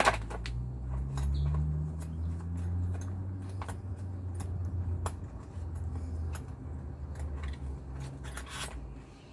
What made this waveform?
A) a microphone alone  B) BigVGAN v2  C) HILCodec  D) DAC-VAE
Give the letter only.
A